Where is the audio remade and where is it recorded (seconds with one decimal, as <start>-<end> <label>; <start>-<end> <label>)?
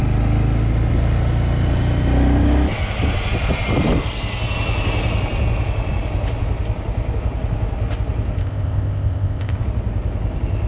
0.0-8.4 recorded; 8.4-9.6 remade; 9.6-10.7 recorded